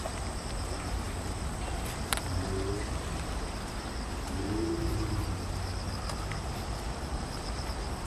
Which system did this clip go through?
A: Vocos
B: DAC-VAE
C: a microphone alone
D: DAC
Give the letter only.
C